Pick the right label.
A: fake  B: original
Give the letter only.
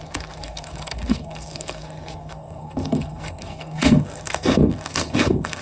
A